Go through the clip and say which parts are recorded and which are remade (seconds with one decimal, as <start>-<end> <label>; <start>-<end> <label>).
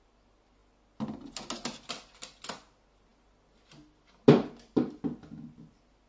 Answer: 0.0-6.1 recorded